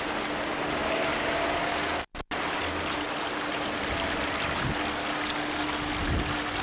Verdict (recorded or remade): recorded